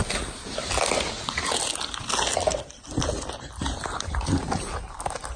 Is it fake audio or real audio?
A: real